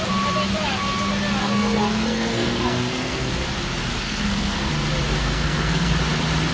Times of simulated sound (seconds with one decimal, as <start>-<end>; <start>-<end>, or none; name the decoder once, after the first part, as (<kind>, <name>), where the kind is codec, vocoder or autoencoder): 1.4-3.3 (codec, SNAC); 4.0-4.7; 5.2-5.9